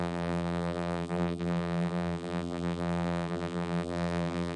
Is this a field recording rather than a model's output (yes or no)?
no